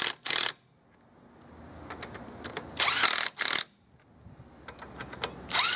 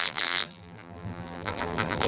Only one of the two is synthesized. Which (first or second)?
second